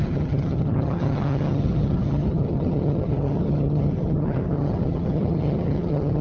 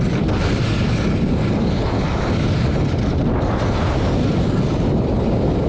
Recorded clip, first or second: second